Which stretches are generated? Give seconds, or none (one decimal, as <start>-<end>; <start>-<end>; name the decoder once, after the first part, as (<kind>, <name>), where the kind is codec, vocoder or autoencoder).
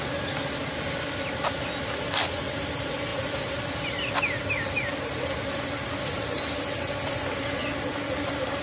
none